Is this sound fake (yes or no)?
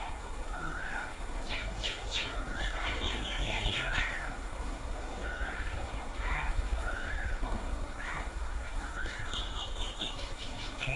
yes